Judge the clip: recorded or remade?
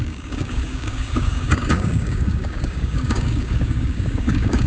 remade